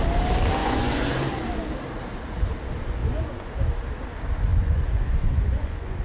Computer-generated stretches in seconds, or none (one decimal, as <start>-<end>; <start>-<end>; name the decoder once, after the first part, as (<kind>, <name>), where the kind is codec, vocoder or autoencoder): 0.6-1.2 (vocoder, Vocos); 3.0-3.5; 4.5-6.0